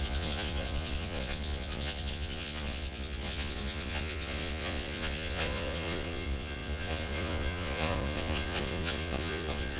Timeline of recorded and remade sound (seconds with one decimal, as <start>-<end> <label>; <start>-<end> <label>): 0.0-9.8 remade